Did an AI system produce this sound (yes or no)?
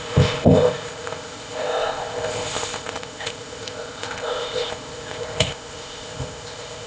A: yes